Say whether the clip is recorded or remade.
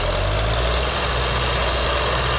recorded